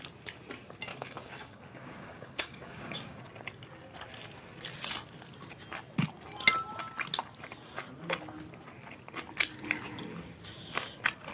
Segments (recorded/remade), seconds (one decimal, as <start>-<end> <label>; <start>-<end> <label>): 0.0-0.9 recorded; 0.9-3.2 remade; 3.2-11.3 recorded